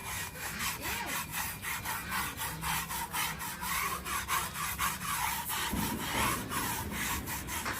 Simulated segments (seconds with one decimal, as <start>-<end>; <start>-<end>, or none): 0.0-0.6